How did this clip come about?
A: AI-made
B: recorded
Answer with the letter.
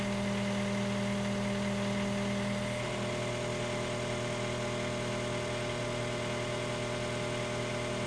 B